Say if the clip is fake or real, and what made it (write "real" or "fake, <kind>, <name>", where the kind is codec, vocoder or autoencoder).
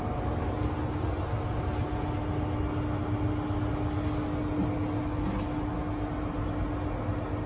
real